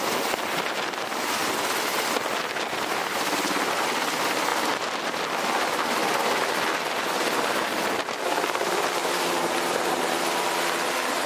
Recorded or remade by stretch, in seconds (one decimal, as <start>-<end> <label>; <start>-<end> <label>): 0.0-1.4 recorded; 1.4-2.0 remade; 2.0-9.0 recorded; 9.0-11.3 remade